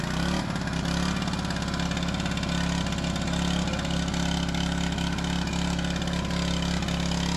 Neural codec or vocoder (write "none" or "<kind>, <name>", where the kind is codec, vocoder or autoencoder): none